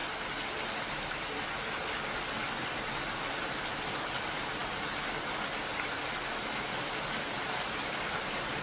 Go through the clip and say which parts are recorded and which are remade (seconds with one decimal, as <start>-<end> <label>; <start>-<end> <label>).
0.0-8.6 recorded